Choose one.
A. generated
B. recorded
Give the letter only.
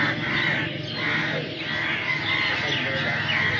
B